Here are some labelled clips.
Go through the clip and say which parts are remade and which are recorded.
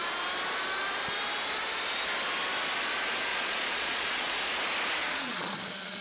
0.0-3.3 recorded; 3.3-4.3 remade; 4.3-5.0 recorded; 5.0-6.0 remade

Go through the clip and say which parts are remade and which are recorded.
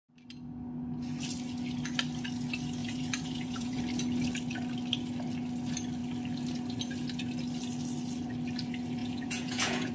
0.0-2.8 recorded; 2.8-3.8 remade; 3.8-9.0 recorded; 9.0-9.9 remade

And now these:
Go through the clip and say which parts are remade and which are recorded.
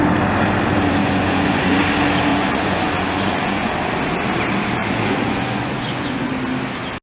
0.0-1.0 recorded; 1.0-1.8 remade; 1.8-2.3 recorded; 2.3-3.7 remade; 3.7-4.8 recorded; 4.8-6.3 remade; 6.3-7.0 recorded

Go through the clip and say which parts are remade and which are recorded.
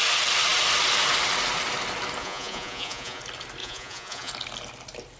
0.0-2.2 recorded; 2.2-3.2 remade; 3.2-3.6 recorded; 3.6-4.3 remade; 4.3-5.2 recorded